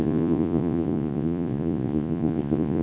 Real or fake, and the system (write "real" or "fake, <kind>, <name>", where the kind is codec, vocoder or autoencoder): fake, vocoder, Vocos